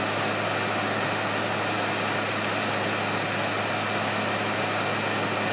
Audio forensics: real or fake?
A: real